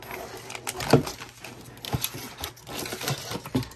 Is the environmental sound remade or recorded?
recorded